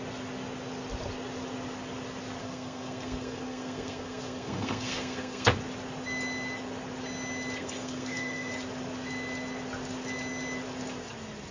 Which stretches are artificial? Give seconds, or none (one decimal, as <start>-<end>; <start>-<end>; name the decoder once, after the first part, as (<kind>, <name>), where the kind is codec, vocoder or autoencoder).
2.4-5.6 (codec, SNAC); 7.6-8.5